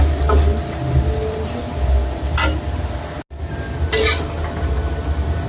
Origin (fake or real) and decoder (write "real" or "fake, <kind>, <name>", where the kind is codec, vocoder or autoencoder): real